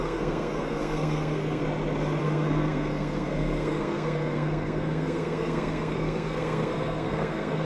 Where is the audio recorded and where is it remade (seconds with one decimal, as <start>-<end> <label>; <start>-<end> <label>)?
0.0-1.6 remade; 1.6-2.2 recorded; 2.2-7.7 remade